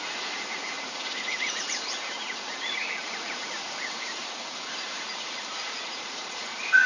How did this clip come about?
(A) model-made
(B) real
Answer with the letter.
A